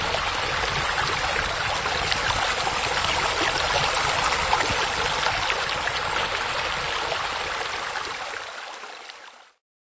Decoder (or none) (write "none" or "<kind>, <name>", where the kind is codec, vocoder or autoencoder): none